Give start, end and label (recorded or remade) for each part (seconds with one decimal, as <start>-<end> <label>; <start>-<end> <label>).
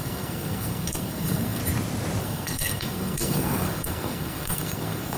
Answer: 0.0-1.6 remade; 1.6-2.2 recorded; 2.2-5.2 remade